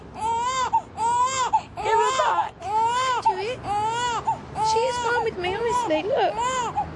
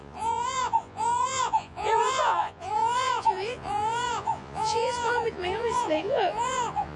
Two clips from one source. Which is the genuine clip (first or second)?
first